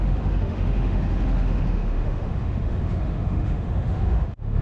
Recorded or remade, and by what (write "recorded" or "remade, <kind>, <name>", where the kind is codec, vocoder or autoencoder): remade, autoencoder, DAC-VAE